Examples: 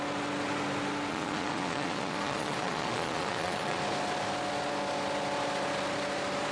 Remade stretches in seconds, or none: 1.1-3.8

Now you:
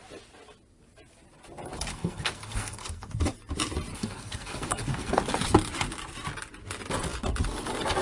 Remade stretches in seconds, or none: 1.9-3.1; 3.9-5.2

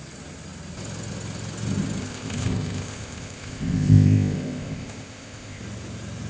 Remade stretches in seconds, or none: 2.0-5.6

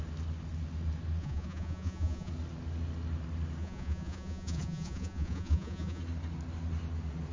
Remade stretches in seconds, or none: 1.2-2.3; 3.6-6.0

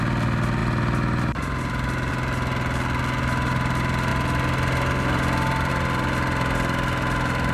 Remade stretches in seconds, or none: none

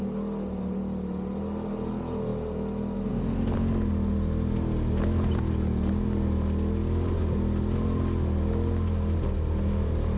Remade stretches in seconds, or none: none